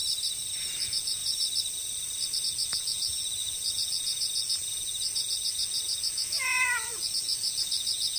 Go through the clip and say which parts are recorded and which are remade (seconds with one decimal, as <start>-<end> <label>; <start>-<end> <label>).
0.0-0.6 recorded; 0.6-1.2 remade; 1.2-2.4 recorded; 2.4-8.2 remade